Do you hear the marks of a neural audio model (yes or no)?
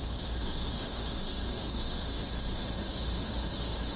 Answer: yes